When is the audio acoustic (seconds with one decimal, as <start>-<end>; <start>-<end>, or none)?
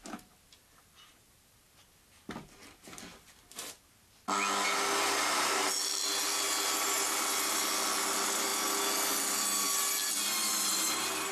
0.0-11.3